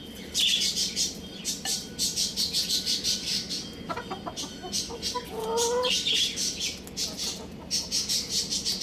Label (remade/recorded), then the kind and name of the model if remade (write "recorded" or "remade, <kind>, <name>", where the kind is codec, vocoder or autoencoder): recorded